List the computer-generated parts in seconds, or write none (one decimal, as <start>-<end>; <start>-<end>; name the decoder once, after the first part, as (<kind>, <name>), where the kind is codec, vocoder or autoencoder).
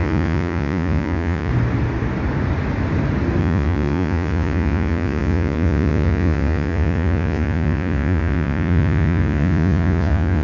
0.0-1.5 (vocoder, Vocos); 3.4-10.4